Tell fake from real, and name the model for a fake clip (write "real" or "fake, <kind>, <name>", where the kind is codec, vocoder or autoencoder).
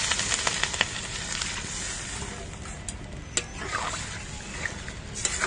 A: real